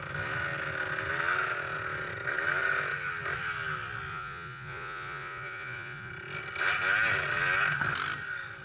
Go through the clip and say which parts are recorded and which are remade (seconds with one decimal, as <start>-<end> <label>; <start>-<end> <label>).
0.0-4.1 recorded; 4.1-6.1 remade; 6.1-8.6 recorded